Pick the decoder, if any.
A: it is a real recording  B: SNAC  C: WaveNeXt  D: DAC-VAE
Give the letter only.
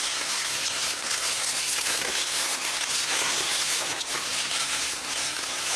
B